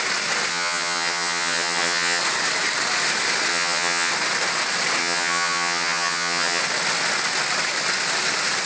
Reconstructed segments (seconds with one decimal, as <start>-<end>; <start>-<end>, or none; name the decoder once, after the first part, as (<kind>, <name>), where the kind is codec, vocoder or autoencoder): 0.5-2.2 (vocoder, HiFi-GAN); 3.5-4.1; 5.0-6.6